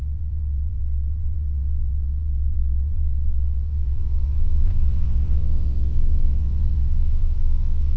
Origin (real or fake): fake